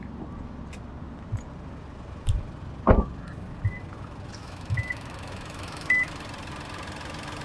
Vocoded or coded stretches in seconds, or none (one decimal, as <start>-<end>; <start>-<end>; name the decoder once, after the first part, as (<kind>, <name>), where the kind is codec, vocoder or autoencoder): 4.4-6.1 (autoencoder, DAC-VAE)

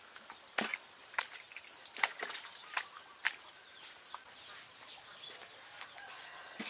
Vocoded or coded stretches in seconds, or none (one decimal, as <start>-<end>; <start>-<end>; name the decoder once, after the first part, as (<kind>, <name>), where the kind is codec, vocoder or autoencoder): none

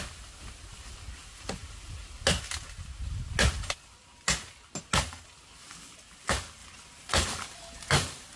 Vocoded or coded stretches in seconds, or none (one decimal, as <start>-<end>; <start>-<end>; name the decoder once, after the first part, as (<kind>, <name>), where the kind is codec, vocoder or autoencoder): none